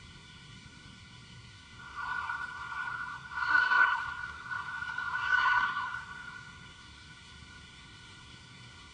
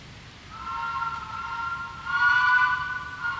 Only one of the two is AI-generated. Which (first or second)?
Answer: first